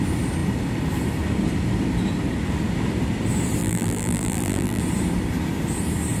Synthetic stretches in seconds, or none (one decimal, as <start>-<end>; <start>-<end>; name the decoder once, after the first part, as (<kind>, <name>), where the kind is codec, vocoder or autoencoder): 3.6-4.8 (vocoder, BigVGAN v2)